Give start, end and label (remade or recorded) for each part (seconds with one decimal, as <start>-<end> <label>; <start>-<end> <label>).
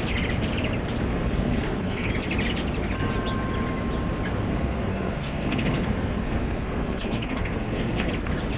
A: 0.0-1.1 recorded; 1.1-2.1 remade; 2.1-4.5 recorded; 4.5-8.1 remade; 8.1-8.6 recorded